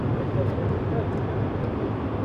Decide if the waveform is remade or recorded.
recorded